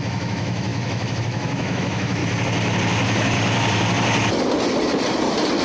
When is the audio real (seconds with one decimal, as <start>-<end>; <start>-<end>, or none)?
2.2-5.6